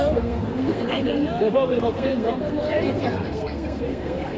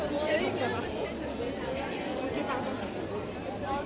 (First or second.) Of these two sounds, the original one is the second